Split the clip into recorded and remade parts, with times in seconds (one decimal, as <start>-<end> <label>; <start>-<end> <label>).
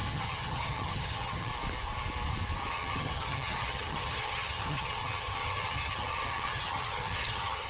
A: 0.0-1.5 remade; 1.5-2.7 recorded; 2.7-7.7 remade